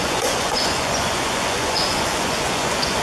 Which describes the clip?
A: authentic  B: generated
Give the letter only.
B